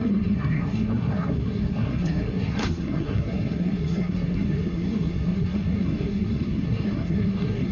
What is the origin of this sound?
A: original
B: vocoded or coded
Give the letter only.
B